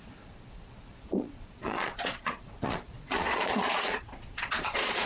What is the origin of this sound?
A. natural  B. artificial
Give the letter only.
B